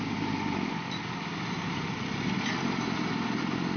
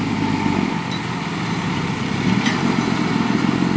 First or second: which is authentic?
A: second